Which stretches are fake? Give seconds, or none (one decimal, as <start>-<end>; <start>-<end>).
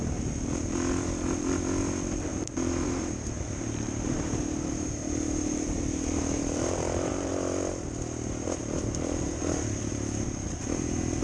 2.3-7.3